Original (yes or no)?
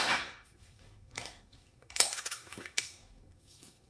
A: no